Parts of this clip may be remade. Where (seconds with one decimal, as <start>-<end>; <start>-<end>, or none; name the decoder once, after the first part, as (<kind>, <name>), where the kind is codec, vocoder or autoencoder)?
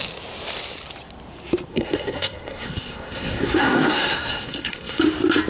1.7-5.0 (codec, SNAC)